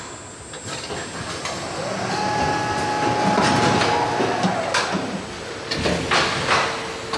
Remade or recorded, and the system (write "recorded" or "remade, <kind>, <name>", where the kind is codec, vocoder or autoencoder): recorded